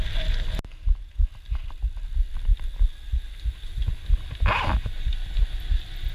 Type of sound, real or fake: real